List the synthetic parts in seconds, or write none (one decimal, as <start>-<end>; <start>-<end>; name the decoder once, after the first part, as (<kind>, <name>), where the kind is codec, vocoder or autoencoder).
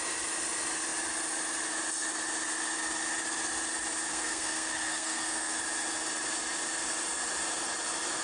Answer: 4.1-5.6 (codec, SNAC)